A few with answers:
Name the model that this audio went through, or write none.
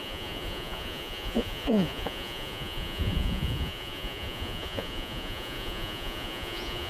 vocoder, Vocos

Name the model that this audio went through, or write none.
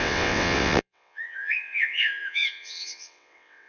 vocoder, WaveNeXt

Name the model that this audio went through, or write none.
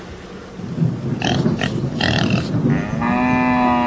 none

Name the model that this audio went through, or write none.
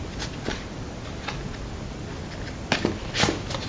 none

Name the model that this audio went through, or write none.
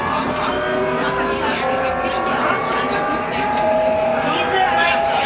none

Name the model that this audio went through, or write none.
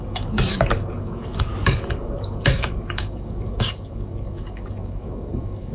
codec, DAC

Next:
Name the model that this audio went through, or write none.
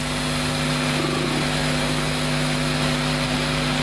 none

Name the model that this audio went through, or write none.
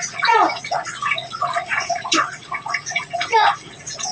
vocoder, Vocos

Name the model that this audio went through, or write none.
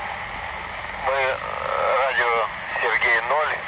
none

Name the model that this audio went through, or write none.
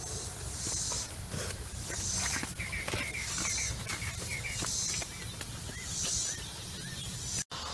none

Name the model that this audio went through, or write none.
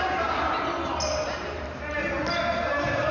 none